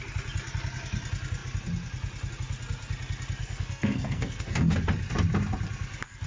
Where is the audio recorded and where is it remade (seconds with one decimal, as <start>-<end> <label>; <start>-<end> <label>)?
0.0-3.4 recorded; 3.4-4.7 remade; 4.7-6.3 recorded